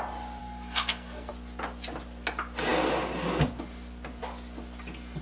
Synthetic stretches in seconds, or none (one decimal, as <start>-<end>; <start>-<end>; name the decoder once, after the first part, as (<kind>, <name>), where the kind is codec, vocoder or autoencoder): 0.4-1.3 (codec, SNAC)